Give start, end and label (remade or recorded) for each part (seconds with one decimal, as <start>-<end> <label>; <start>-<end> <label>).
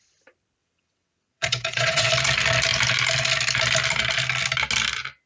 0.0-0.6 recorded; 0.6-2.1 remade; 2.1-5.3 recorded